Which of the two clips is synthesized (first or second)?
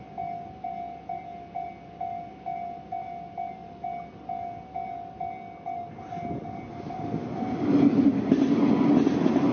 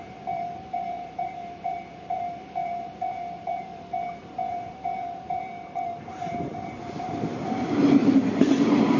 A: second